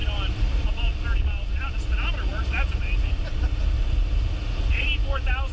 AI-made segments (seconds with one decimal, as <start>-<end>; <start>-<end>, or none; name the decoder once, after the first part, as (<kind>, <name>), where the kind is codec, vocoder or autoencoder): 2.3-4.3 (vocoder, BigVGAN v2)